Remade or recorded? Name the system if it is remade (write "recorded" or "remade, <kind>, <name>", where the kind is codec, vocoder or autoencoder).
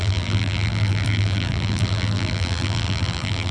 remade, vocoder, BigVGAN v2